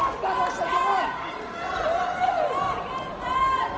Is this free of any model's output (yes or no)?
yes